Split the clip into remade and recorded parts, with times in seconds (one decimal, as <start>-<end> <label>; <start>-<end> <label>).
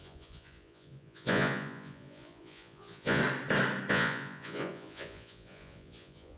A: 0.0-3.2 remade; 3.2-3.9 recorded; 3.9-6.4 remade